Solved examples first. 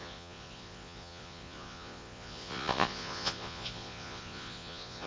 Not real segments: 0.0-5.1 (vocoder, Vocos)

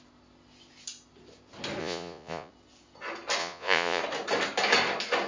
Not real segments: 1.8-2.5 (vocoder, Vocos); 3.4-4.0

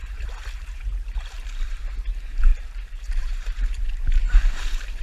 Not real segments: 0.0-5.0 (vocoder, BigVGAN v2)

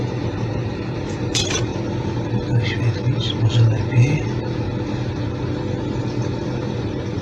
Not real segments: 0.0-1.7 (vocoder, BigVGAN v2); 6.0-7.2

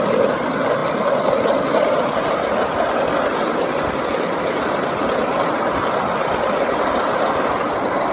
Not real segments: none

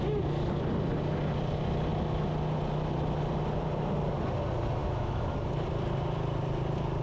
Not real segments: 4.8-5.3 (autoencoder, DAC-VAE)